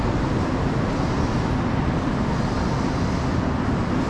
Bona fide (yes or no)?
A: yes